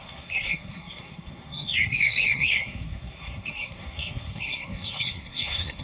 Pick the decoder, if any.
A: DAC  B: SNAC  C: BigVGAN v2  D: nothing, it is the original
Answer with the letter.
B